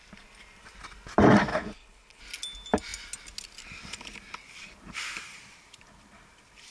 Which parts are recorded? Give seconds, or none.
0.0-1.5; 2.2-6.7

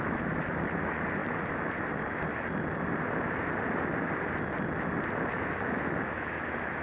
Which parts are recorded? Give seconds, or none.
1.2-5.3

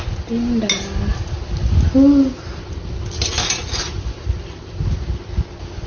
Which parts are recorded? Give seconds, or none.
0.0-5.9